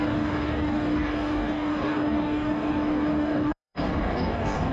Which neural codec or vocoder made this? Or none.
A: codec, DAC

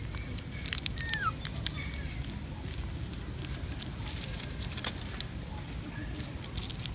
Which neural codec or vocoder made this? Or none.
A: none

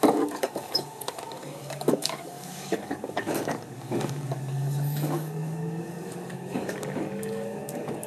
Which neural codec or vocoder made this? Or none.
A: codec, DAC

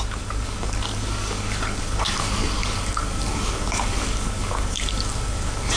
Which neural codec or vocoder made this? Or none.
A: codec, DAC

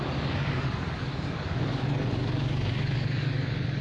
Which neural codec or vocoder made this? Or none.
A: codec, DAC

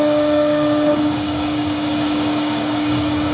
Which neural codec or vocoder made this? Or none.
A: codec, DAC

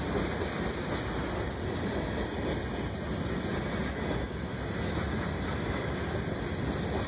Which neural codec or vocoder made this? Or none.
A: none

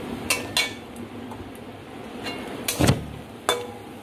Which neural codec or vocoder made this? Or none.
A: none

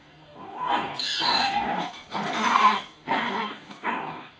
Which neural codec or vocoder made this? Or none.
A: codec, DAC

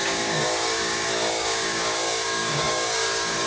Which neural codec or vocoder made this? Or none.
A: codec, DAC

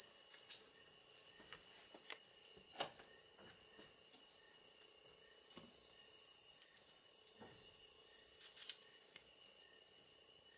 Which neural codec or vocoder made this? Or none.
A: none